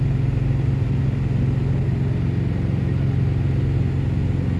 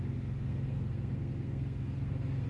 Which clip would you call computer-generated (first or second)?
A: second